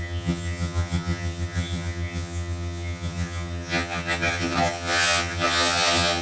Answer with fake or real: fake